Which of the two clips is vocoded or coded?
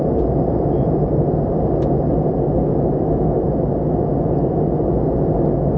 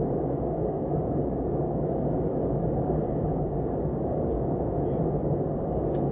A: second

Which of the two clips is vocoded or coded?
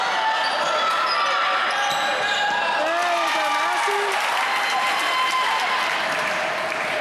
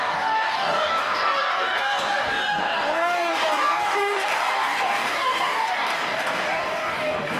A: second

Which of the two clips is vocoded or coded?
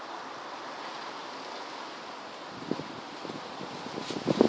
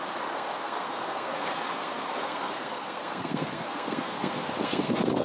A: second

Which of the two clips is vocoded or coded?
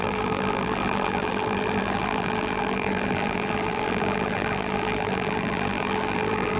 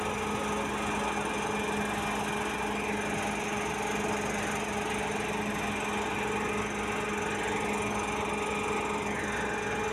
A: first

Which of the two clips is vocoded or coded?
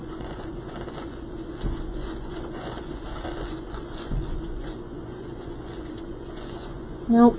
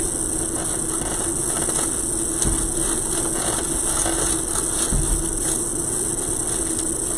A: first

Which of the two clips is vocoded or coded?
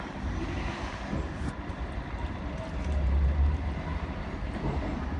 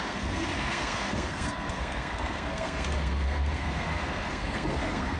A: second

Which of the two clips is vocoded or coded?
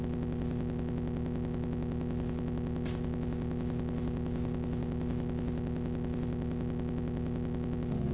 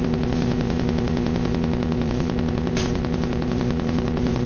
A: second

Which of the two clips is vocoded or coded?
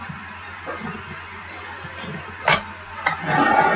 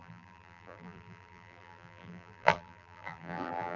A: second